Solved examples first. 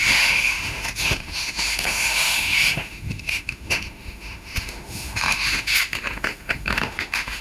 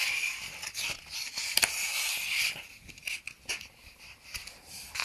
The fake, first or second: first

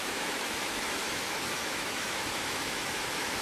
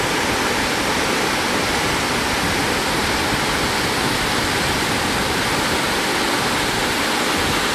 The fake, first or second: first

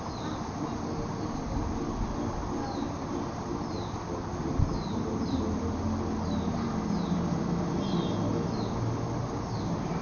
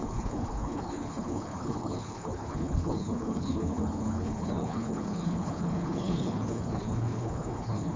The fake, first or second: second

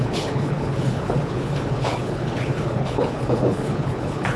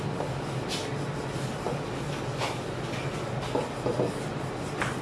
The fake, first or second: first